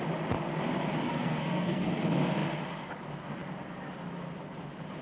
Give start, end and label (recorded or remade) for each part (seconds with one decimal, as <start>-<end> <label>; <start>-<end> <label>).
0.0-1.1 recorded; 1.1-1.9 remade; 1.9-5.0 recorded